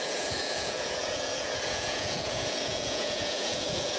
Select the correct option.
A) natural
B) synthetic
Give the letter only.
B